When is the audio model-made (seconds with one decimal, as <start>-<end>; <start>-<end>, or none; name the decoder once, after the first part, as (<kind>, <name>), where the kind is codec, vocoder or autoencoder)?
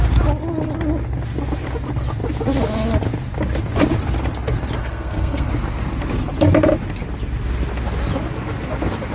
4.8-5.5 (codec, SNAC)